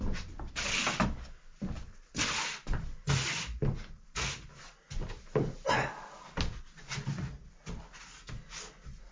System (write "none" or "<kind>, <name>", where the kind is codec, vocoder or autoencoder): none